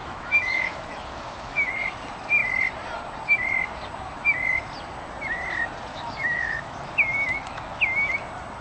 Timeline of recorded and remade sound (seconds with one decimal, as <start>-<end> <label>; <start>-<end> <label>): 0.0-1.7 remade; 1.7-5.9 recorded; 5.9-8.1 remade; 8.1-8.6 recorded